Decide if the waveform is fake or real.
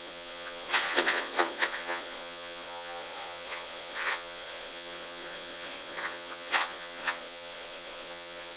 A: fake